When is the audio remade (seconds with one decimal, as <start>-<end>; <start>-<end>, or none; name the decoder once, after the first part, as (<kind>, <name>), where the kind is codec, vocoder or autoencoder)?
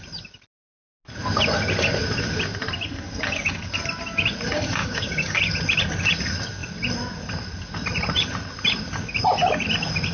4.8-5.4 (codec, DAC)